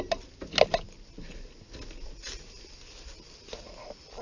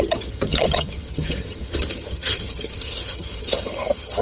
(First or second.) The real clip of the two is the first